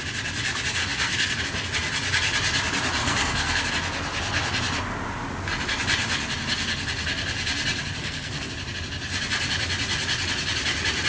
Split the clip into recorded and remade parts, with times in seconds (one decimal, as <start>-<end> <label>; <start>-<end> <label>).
0.0-0.8 recorded; 0.8-1.4 remade; 1.4-3.0 recorded; 3.0-3.7 remade; 3.7-8.0 recorded; 8.0-8.5 remade; 8.5-11.1 recorded

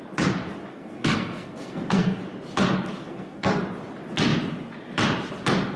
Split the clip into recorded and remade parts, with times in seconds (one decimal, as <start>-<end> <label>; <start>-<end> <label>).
0.0-0.7 recorded; 0.7-2.2 remade; 2.2-3.0 recorded; 3.0-3.6 remade; 3.6-5.8 recorded

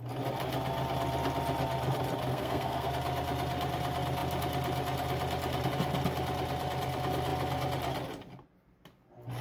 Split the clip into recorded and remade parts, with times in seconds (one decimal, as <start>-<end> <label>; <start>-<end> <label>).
0.0-2.3 recorded; 2.3-2.9 remade; 2.9-9.4 recorded

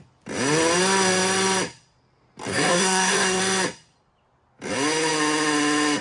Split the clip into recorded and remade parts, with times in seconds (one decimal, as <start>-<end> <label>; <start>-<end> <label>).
0.0-2.5 recorded; 2.5-3.4 remade; 3.4-6.0 recorded